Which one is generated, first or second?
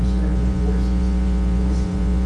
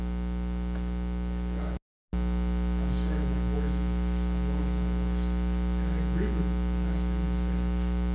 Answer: first